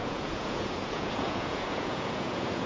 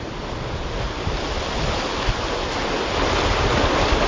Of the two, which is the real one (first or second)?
second